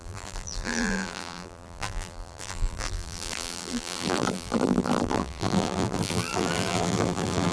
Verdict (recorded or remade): remade